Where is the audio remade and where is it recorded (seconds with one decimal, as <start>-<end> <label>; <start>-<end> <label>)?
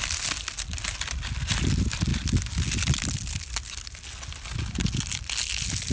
0.0-5.9 recorded